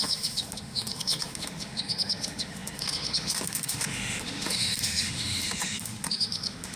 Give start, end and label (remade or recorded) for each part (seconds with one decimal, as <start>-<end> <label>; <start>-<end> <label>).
0.0-6.8 remade